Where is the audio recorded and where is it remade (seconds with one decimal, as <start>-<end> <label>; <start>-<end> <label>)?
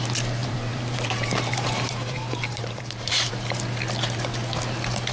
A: 0.0-0.4 recorded; 0.4-3.3 remade; 3.3-5.1 recorded